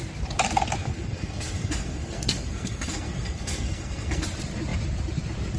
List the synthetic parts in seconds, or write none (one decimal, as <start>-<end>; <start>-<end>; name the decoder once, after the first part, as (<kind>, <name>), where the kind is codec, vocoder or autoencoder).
0.8-4.2 (codec, SNAC)